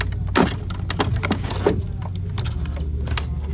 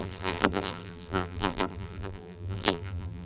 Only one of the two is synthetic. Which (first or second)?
second